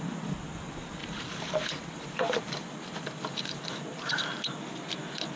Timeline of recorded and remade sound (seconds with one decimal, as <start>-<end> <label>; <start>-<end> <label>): 0.0-1.0 recorded; 1.0-4.2 remade; 4.2-5.4 recorded